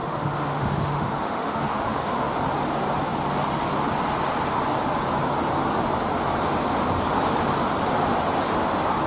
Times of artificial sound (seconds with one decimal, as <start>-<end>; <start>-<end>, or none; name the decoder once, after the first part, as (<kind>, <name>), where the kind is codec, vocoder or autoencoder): 0.0-2.3 (autoencoder, DAC-VAE)